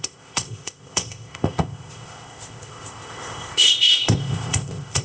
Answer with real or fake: fake